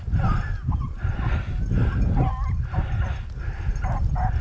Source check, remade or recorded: recorded